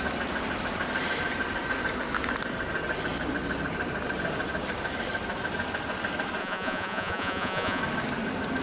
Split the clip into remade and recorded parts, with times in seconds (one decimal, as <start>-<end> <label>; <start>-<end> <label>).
0.0-6.4 recorded; 6.4-7.8 remade; 7.8-8.6 recorded